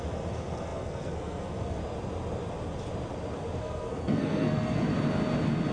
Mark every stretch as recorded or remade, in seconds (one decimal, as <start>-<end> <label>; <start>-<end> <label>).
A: 0.0-1.8 remade; 1.8-3.6 recorded; 3.6-4.9 remade; 4.9-5.7 recorded

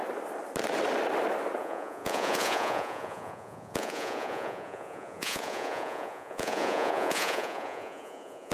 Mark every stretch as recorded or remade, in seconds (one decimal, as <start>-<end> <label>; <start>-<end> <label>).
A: 0.0-1.6 recorded; 1.6-8.5 remade

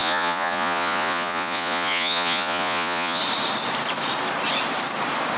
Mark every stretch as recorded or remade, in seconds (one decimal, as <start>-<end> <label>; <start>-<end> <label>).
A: 0.0-3.2 remade; 3.2-5.4 recorded

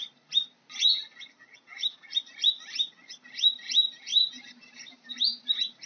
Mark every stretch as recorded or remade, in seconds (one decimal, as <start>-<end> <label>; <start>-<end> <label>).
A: 0.0-4.1 recorded; 4.1-5.9 remade

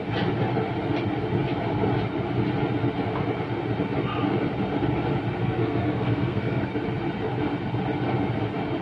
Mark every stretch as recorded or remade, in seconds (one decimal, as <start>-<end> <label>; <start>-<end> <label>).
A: 0.0-5.4 recorded; 5.4-6.6 remade; 6.6-8.8 recorded

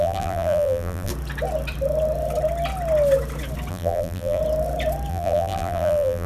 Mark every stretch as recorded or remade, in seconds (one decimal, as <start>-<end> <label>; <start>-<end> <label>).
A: 0.0-1.1 remade; 1.1-3.7 recorded; 3.7-4.4 remade; 4.4-5.1 recorded; 5.1-6.3 remade

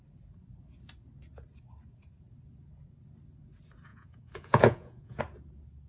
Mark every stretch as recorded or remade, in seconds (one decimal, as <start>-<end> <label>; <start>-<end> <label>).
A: 0.0-3.9 recorded; 3.9-5.2 remade; 5.2-5.9 recorded

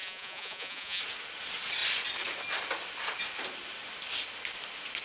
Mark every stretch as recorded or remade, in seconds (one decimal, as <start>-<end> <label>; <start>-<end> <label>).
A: 0.0-1.0 remade; 1.0-5.0 recorded